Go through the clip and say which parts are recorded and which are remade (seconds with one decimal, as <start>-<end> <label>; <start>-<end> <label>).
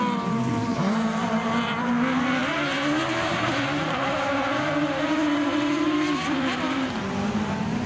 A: 0.0-0.7 recorded; 0.7-1.9 remade; 1.9-2.4 recorded; 2.4-7.0 remade; 7.0-7.9 recorded